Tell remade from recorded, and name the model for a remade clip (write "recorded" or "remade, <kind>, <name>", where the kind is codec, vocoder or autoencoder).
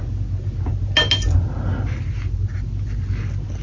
recorded